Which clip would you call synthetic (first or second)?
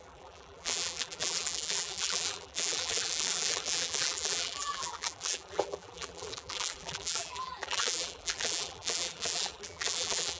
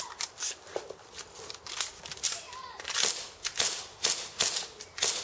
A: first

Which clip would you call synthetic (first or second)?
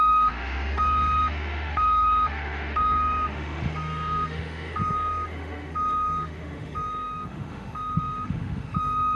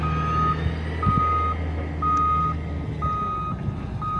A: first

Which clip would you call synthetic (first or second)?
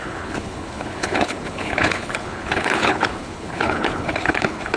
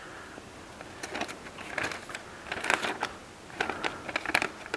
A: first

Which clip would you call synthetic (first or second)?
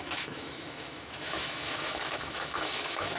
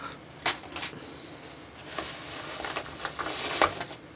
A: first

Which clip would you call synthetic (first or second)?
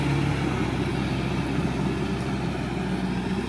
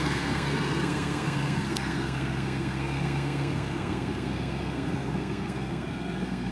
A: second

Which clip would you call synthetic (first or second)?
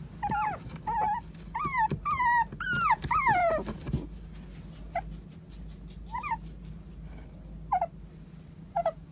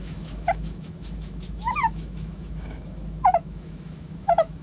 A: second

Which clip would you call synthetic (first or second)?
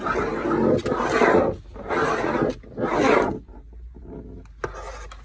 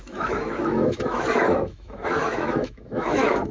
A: second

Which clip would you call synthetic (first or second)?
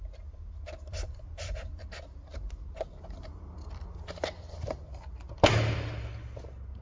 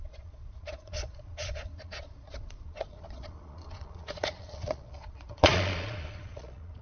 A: second